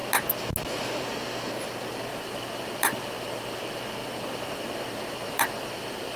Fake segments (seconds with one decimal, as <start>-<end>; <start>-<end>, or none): 2.1-3.6; 4.0-6.2